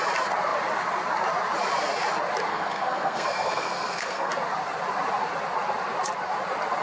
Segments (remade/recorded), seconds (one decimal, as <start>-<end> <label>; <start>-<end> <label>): 0.0-2.5 recorded; 2.5-4.3 remade; 4.3-6.8 recorded